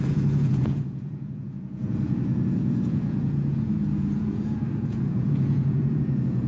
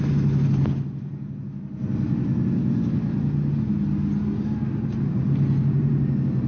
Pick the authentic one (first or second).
second